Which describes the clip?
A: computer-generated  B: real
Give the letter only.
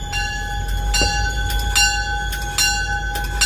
B